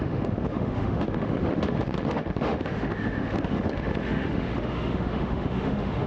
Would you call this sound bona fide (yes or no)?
no